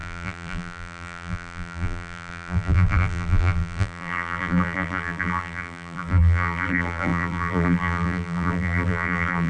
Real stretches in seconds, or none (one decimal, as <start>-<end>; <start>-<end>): none

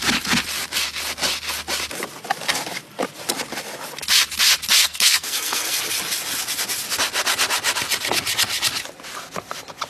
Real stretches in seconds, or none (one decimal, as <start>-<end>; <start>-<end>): 0.0-4.8; 5.8-9.9